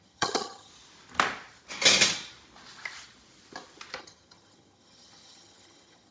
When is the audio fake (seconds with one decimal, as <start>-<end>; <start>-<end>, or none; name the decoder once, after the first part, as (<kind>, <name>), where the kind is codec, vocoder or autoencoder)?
0.0-0.7 (vocoder, HiFi-GAN); 4.0-6.1